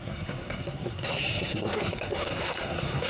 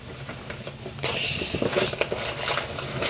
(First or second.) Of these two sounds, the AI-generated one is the first